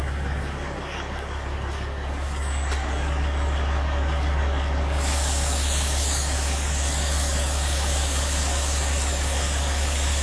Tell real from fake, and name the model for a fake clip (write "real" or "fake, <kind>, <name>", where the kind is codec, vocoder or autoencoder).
fake, codec, DAC